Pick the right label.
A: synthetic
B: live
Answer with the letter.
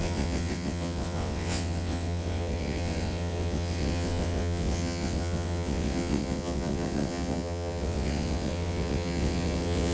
A